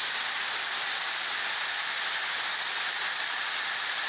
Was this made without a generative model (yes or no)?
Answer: yes